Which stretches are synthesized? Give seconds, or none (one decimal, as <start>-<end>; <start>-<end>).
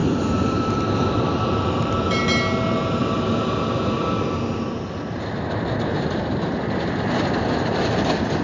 none